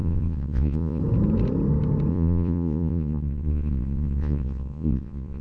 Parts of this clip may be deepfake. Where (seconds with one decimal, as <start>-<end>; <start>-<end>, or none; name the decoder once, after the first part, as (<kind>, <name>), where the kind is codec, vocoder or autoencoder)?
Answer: 0.0-1.0 (vocoder, Vocos); 2.1-5.4

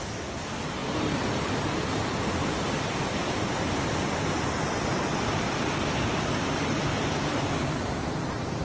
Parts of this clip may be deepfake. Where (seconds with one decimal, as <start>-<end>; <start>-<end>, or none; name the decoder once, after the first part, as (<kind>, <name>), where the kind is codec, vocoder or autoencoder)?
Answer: none